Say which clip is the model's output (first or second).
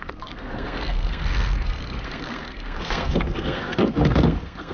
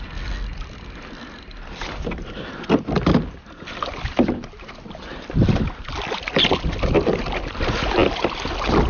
first